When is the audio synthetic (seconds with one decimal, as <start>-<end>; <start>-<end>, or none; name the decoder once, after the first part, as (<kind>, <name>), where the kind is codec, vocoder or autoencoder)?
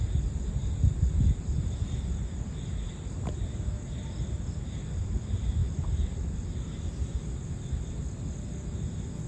none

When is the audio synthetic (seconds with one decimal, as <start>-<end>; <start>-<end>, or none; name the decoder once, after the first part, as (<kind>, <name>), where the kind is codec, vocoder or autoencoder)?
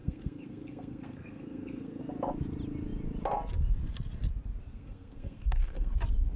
0.0-2.0 (codec, SNAC); 4.7-5.9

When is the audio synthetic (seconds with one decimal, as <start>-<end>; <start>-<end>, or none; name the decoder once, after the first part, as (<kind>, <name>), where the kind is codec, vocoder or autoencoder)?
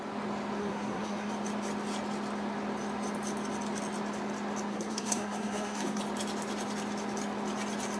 0.6-1.3 (codec, SNAC); 4.7-6.0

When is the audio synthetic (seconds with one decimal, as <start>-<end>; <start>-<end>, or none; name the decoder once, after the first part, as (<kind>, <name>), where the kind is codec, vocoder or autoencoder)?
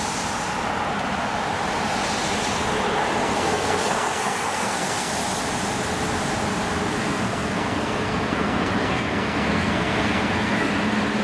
3.2-5.1 (codec, SNAC); 7.0-10.7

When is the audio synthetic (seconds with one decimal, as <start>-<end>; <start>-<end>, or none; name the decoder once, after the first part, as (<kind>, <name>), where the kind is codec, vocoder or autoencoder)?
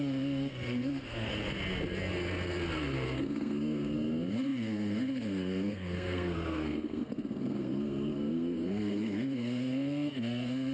0.0-1.3 (codec, SNAC); 2.8-10.7